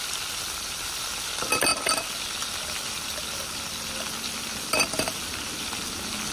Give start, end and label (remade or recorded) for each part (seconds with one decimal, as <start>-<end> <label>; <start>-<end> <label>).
0.0-6.3 recorded